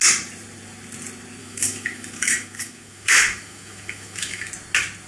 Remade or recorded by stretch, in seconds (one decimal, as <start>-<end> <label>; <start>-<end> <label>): 0.0-1.4 recorded; 1.4-4.5 remade; 4.5-5.1 recorded

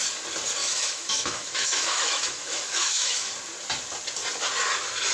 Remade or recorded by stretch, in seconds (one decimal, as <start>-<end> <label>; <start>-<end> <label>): 0.0-0.6 recorded; 0.6-3.3 remade; 3.3-5.1 recorded

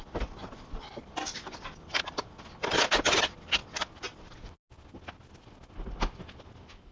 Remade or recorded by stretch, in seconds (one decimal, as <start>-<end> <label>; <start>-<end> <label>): 0.0-6.9 recorded

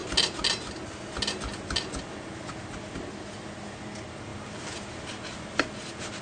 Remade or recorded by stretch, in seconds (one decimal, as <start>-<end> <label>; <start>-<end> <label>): 0.0-6.2 recorded